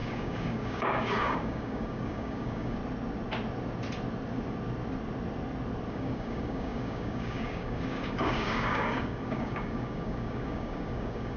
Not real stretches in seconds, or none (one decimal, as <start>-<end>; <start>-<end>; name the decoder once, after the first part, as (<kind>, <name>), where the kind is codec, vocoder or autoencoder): 0.0-2.8 (codec, DAC); 5.9-11.4